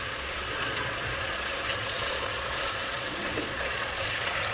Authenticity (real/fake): fake